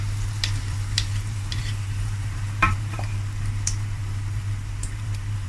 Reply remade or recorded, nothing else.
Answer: remade